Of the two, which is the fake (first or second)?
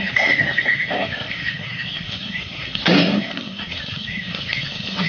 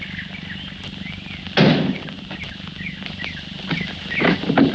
first